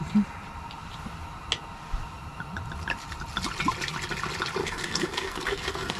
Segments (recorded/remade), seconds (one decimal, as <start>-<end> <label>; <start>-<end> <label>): 0.0-4.6 recorded; 4.6-6.0 remade